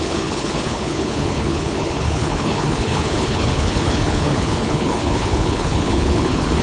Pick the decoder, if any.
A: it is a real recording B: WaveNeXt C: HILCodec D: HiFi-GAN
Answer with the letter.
C